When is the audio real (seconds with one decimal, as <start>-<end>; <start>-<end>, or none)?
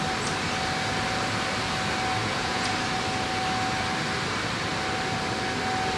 0.0-2.2; 2.7-6.0